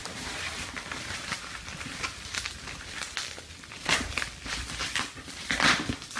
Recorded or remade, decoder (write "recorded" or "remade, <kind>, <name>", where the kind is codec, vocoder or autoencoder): remade, vocoder, BigVGAN v2